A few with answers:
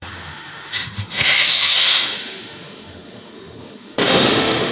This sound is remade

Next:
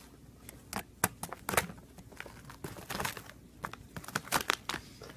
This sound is recorded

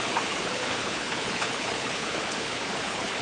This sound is remade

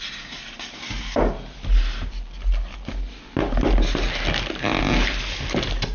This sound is recorded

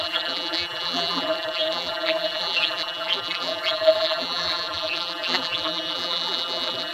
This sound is remade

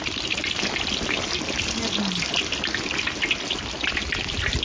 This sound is recorded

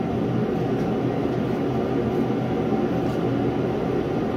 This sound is recorded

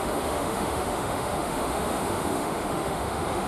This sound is remade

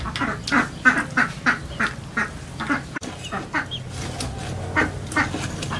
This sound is recorded